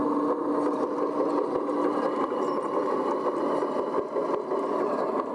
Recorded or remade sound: recorded